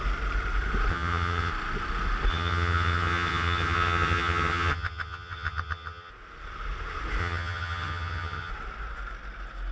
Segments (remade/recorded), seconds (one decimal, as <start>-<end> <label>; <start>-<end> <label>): 0.0-0.9 recorded; 0.9-1.5 remade; 1.5-2.3 recorded; 2.3-6.1 remade; 6.1-7.2 recorded; 7.2-8.5 remade; 8.5-9.7 recorded